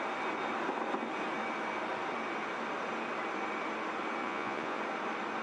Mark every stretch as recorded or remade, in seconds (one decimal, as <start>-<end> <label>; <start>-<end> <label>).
0.0-4.2 recorded; 4.2-4.8 remade; 4.8-5.4 recorded